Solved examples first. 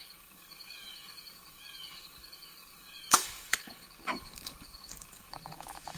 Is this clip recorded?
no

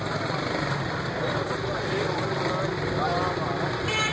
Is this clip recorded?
yes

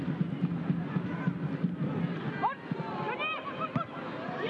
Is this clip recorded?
yes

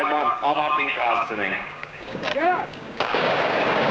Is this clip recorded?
no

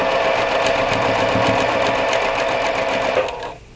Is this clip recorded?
no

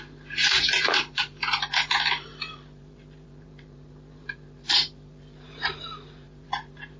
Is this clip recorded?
no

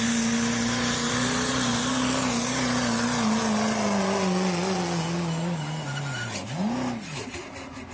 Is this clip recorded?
yes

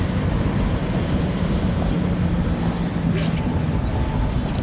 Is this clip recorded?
yes